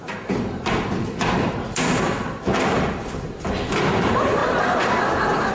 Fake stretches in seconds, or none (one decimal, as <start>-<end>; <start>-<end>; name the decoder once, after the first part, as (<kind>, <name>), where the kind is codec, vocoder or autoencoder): 0.0-5.5 (vocoder, BigVGAN v2)

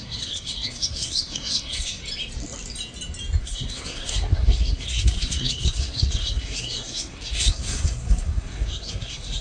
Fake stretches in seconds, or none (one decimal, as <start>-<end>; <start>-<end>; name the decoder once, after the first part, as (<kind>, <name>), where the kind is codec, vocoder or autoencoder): 0.0-2.0 (codec, SNAC); 3.4-9.4

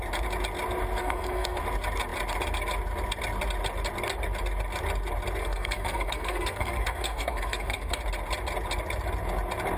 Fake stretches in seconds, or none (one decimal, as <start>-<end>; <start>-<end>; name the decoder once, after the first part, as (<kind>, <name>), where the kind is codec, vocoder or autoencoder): 1.0-1.6 (codec, SNAC); 5.4-8.0

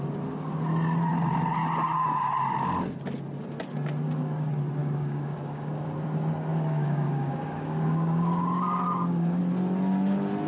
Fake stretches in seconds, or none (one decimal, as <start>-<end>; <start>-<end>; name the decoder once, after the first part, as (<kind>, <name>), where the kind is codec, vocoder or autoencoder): 4.8-5.8 (codec, DAC); 6.5-9.4

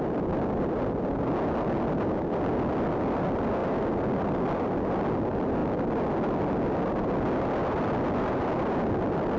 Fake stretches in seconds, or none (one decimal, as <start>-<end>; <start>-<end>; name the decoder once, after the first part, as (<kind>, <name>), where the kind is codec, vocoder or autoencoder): none

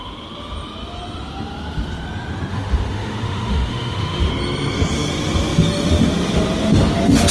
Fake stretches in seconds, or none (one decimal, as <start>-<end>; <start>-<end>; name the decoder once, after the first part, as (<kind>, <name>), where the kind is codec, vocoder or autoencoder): 2.5-4.3 (autoencoder, DAC-VAE)

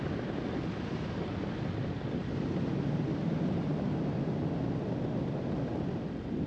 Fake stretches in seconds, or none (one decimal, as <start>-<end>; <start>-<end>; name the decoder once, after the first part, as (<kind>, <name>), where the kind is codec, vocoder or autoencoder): none